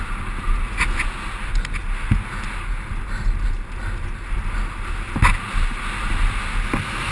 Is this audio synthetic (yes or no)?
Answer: no